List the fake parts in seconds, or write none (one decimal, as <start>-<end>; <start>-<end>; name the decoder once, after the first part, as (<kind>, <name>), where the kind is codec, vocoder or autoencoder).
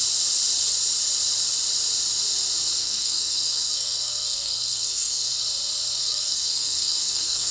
2.8-5.3 (codec, SNAC); 6.0-7.5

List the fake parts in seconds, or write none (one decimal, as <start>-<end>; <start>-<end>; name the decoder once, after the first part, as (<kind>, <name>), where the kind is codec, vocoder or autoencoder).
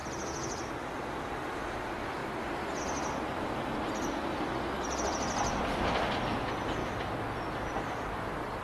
0.6-2.2 (vocoder, BigVGAN v2); 2.8-6.8; 7.7-8.6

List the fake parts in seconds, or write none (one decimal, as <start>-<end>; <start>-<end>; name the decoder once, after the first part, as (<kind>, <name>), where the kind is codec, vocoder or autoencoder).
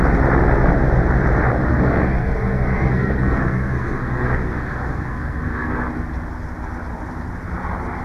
1.7-5.9 (codec, SNAC)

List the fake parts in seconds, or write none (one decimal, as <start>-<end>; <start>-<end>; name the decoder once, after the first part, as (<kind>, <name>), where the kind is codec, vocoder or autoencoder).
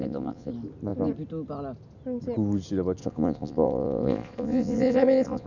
0.0-0.5 (vocoder, Vocos); 3.0-5.5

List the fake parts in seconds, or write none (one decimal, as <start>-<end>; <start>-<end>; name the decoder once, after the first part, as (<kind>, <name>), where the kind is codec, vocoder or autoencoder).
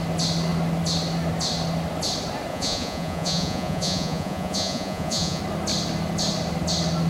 2.5-5.4 (vocoder, Vocos)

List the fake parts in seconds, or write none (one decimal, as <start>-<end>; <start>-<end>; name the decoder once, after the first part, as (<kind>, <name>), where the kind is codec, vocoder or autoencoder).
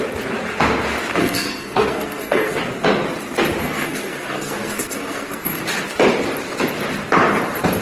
1.2-2.6 (codec, SNAC); 3.6-5.6